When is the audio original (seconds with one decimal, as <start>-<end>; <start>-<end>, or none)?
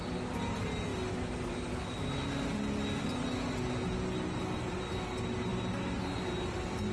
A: 0.0-6.9